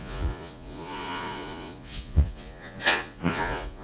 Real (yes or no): no